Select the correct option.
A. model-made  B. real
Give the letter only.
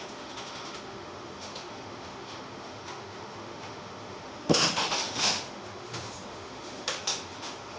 A